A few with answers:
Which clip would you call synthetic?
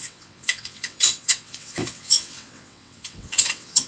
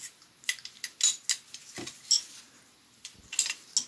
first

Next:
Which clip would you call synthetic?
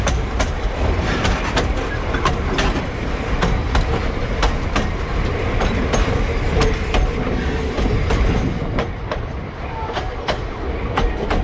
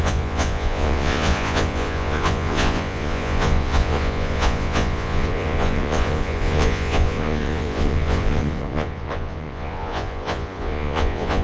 second